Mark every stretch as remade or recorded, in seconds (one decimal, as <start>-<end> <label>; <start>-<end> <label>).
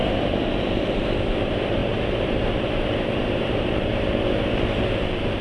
0.0-5.4 remade